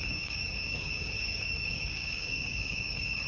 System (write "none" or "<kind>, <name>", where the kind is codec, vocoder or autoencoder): codec, DAC